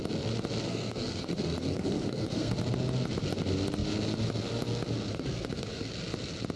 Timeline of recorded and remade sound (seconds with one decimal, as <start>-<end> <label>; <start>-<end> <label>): 0.0-0.7 recorded; 0.7-2.5 remade; 2.5-5.1 recorded; 5.1-5.9 remade; 5.9-6.6 recorded